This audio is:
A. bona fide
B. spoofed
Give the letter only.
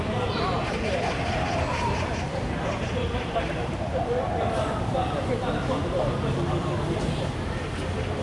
A